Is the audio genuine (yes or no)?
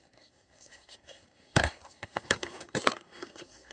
no